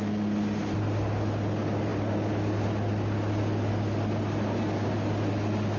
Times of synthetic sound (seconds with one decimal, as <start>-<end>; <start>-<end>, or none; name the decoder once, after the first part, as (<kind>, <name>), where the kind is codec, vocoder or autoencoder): none